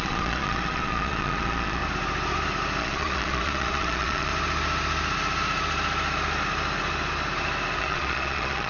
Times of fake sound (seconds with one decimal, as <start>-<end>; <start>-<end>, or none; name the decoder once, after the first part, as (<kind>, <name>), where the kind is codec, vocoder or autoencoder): 0.0-1.8 (vocoder, Vocos); 2.8-4.3; 7.8-8.7